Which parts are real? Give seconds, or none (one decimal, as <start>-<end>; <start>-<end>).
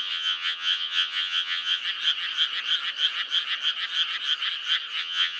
1.8-5.0